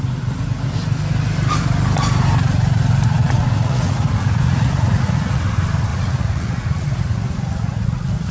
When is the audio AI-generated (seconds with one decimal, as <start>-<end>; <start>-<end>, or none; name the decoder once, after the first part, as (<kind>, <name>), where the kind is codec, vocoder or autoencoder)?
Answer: 3.2-5.4 (vocoder, Vocos); 5.9-8.3

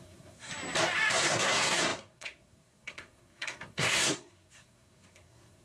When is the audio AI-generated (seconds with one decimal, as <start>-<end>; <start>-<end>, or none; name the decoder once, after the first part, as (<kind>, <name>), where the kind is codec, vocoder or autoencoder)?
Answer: 0.0-0.5 (codec, SNAC); 1.1-5.6

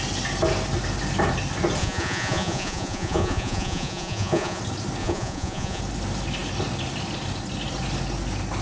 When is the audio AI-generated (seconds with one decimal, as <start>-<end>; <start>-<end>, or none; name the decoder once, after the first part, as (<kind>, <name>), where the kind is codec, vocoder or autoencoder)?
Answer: 1.8-4.6 (vocoder, Vocos); 5.0-5.8

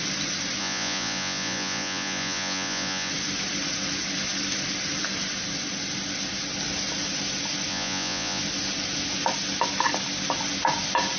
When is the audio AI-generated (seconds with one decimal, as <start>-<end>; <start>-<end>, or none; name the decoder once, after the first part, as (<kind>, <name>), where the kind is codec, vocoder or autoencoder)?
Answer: 0.6-3.1 (vocoder, Vocos); 7.7-8.4

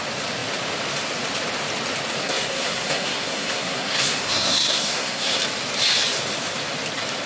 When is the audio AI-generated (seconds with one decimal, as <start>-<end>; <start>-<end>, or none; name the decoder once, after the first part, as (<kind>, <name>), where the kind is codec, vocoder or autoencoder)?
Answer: 2.2-5.4 (codec, SNAC)

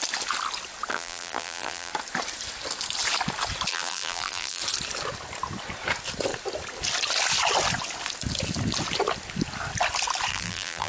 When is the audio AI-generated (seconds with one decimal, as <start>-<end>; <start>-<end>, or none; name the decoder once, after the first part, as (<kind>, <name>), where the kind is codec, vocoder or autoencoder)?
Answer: 0.9-1.9 (vocoder, BigVGAN v2); 3.7-4.6; 10.3-10.9

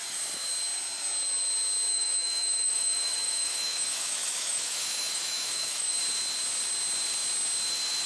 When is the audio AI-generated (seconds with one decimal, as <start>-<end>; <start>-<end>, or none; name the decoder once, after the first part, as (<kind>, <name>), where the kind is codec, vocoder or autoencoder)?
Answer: 1.9-6.0 (autoencoder, DAC-VAE)